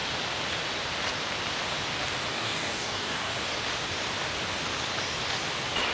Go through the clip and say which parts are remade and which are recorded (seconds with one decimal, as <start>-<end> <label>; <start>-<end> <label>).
0.0-2.3 recorded; 2.3-3.3 remade; 3.3-5.9 recorded